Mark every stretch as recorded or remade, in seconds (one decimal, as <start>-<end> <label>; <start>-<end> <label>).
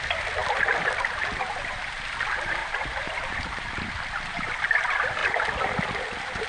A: 0.0-2.6 recorded; 2.6-3.7 remade; 3.7-6.5 recorded